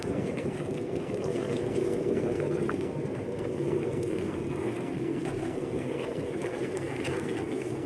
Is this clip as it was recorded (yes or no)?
no